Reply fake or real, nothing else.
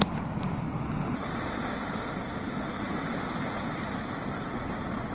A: real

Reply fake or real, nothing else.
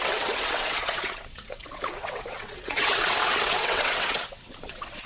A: fake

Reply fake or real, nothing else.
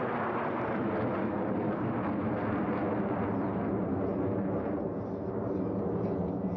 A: real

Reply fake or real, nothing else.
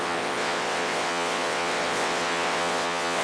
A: fake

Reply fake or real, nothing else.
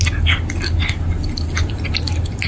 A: real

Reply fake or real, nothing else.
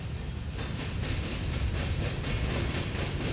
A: real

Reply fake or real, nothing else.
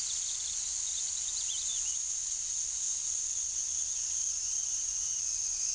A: real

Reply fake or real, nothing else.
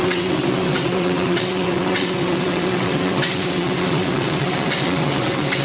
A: fake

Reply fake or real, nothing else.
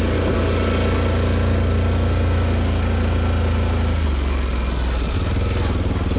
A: real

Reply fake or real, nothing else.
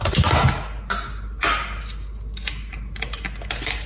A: real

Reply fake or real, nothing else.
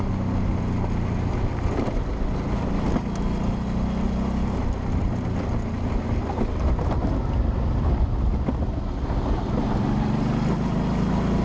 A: real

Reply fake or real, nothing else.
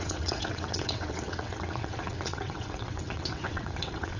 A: fake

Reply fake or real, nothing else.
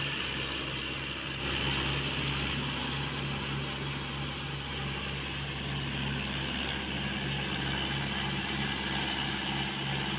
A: real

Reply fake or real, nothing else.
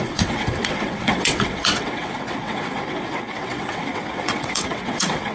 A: fake